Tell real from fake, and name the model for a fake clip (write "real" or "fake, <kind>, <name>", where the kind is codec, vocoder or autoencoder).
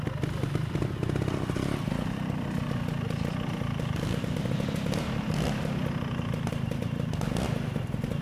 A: real